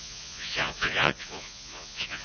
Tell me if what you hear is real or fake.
fake